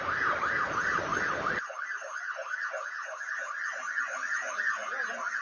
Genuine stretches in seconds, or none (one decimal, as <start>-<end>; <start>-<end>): 0.0-5.4